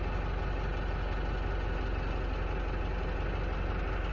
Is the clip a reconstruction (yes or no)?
no